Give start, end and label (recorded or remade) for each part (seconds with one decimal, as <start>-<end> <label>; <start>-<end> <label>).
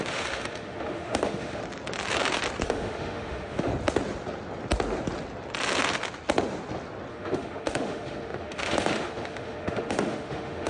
0.0-1.6 remade; 1.6-2.6 recorded; 2.6-3.7 remade; 3.7-7.1 recorded; 7.1-10.7 remade